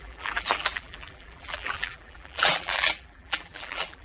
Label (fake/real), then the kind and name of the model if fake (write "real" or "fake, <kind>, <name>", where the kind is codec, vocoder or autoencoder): fake, vocoder, BigVGAN v2